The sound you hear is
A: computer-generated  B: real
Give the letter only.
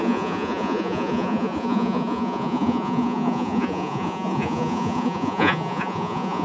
A